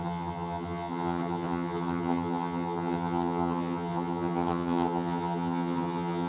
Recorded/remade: remade